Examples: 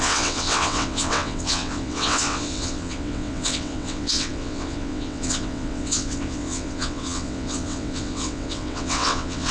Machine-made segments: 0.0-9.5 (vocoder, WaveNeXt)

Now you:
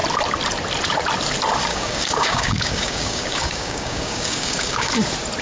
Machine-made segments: 1.7-4.9 (codec, DAC)

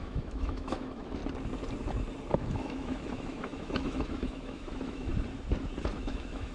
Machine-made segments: 0.0-1.2 (autoencoder, DAC-VAE); 2.3-5.1; 5.9-6.5

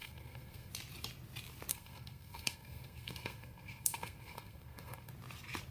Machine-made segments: 0.0-0.7 (codec, SNAC); 1.7-5.1